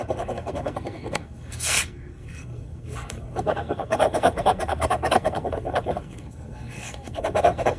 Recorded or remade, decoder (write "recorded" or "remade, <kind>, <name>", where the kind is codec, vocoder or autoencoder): remade, codec, SNAC